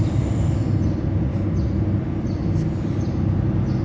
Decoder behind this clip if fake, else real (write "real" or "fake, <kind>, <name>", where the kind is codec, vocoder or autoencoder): real